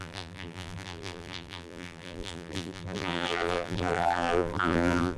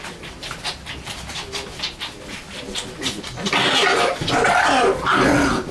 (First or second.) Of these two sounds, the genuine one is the second